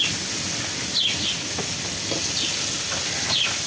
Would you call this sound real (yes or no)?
yes